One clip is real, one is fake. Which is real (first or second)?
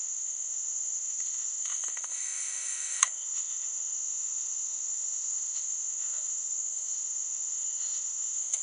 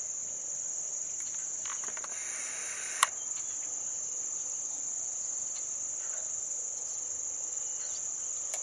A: second